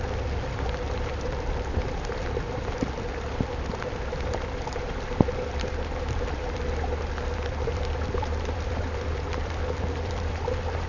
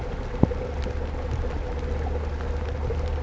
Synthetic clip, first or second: first